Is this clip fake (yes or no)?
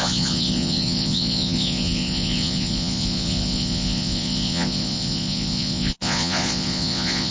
yes